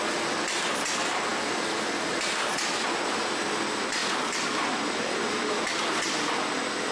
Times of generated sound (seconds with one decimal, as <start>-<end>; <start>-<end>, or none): 4.0-5.7